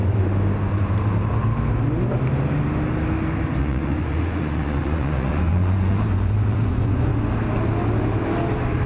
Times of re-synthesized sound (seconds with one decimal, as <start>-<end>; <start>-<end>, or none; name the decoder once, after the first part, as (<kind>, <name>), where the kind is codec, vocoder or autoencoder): 3.6-7.1 (vocoder, Vocos)